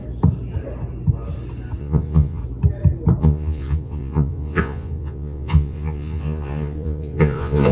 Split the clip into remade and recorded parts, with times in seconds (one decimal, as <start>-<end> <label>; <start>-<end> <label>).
0.0-1.8 recorded; 1.8-2.4 remade; 2.4-3.2 recorded; 3.2-7.7 remade